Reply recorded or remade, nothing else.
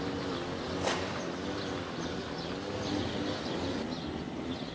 recorded